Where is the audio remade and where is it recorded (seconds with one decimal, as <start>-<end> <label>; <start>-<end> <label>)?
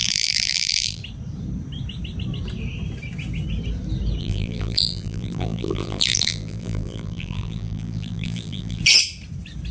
0.0-1.0 remade; 1.0-4.2 recorded; 4.2-8.8 remade; 8.8-9.7 recorded